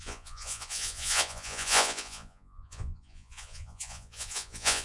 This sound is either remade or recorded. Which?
remade